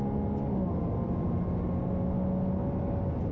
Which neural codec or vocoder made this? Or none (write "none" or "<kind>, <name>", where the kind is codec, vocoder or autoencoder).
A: none